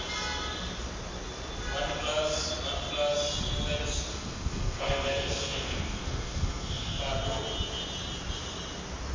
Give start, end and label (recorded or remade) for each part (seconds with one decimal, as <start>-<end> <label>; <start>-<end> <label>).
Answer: 0.0-4.1 recorded; 4.1-7.0 remade; 7.0-9.1 recorded

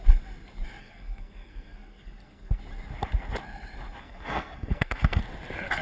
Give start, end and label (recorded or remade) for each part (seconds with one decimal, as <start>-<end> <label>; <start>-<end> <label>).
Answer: 0.0-0.8 recorded; 0.8-2.6 remade; 2.6-4.0 recorded; 4.0-5.2 remade; 5.2-5.8 recorded

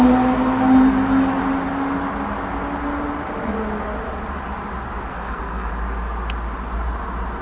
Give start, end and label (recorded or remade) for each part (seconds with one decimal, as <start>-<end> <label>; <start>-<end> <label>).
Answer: 0.0-5.1 recorded; 5.1-5.7 remade; 5.7-7.4 recorded

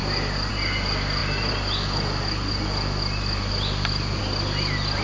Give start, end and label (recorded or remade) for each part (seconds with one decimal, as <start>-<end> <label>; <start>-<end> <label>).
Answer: 0.0-5.0 recorded